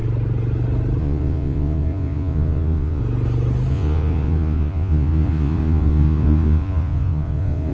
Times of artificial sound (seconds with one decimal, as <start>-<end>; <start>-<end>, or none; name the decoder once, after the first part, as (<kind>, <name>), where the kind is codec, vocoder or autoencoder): 1.0-3.0 (vocoder, Vocos); 3.7-7.7